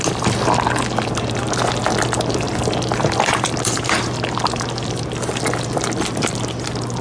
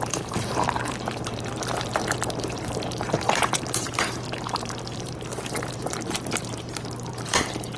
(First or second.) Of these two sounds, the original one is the first